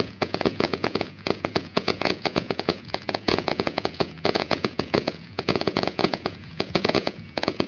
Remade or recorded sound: remade